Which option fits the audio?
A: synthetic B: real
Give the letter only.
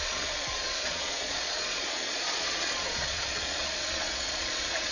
A